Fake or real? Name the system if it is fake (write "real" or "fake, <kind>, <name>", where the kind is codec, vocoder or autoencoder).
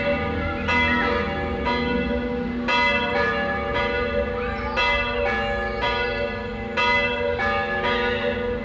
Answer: real